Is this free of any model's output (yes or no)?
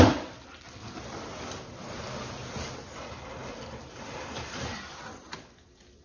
yes